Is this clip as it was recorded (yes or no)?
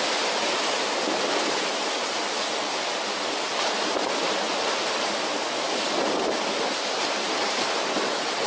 yes